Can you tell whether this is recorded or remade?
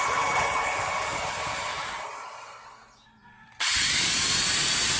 recorded